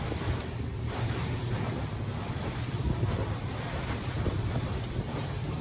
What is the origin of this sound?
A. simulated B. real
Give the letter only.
A